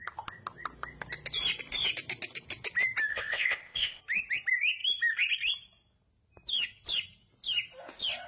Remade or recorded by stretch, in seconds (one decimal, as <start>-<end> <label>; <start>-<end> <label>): 0.0-3.1 recorded; 3.1-4.0 remade; 4.0-8.3 recorded

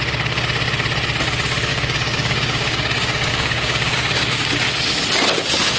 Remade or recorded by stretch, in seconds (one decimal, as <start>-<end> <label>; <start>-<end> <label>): 0.0-1.7 recorded; 1.7-4.5 remade; 4.5-5.8 recorded

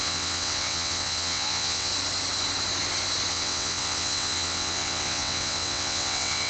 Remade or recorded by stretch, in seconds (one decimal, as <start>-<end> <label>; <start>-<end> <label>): 0.0-1.9 remade; 1.9-3.3 recorded; 3.3-6.5 remade

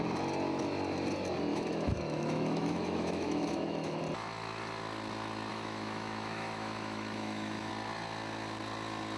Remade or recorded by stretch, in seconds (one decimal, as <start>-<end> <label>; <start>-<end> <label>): 0.0-1.5 recorded; 1.5-4.0 remade; 4.0-5.5 recorded; 5.5-7.7 remade; 7.7-9.2 recorded

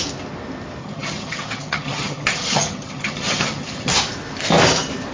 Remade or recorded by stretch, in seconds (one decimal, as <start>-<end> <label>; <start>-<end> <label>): 0.0-0.8 recorded; 0.8-3.9 remade; 3.9-5.1 recorded

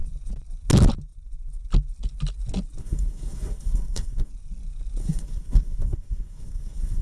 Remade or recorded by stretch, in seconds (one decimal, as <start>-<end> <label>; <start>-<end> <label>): 0.0-2.8 recorded; 2.8-4.3 remade; 4.3-5.0 recorded; 5.0-7.0 remade

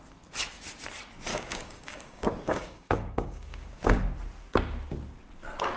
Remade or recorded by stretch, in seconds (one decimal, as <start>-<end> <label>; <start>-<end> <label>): 0.0-1.3 recorded; 1.3-3.8 remade; 3.8-5.8 recorded